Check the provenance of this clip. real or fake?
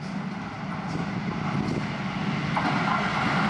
real